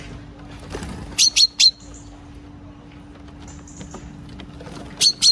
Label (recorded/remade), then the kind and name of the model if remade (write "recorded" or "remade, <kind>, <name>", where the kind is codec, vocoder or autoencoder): recorded